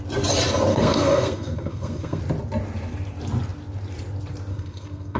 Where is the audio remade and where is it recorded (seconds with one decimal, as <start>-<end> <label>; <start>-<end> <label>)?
0.0-0.7 recorded; 0.7-2.2 remade; 2.2-4.5 recorded; 4.5-5.2 remade